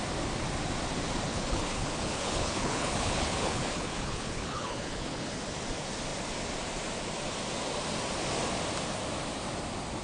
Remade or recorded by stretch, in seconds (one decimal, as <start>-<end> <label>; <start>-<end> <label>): 0.0-1.3 recorded; 1.3-5.3 remade; 5.3-10.0 recorded